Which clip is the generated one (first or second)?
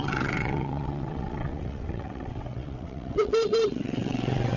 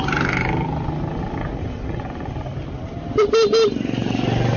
first